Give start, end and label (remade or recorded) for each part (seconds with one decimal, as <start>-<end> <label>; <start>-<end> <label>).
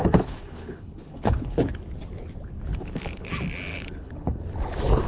0.0-1.7 remade; 1.7-2.7 recorded; 2.7-3.3 remade; 3.3-3.7 recorded; 3.7-4.5 remade; 4.5-5.1 recorded